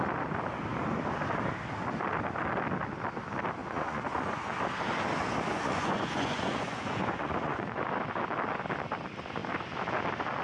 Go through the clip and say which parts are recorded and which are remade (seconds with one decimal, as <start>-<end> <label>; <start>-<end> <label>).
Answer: 0.0-3.6 recorded; 3.6-4.4 remade; 4.4-5.5 recorded; 5.5-7.8 remade; 7.8-10.4 recorded